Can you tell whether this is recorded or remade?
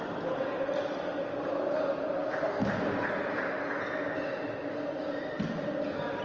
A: recorded